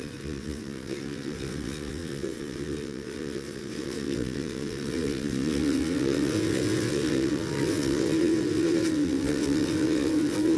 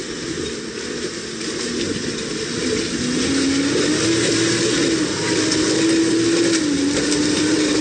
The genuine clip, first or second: second